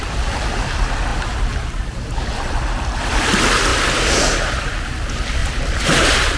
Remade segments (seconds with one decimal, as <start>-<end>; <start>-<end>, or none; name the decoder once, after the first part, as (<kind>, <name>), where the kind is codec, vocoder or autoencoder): 5.4-6.4 (vocoder, BigVGAN v2)